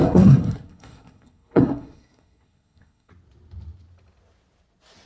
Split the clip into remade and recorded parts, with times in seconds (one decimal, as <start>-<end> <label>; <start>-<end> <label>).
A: 0.0-3.1 remade; 3.1-5.1 recorded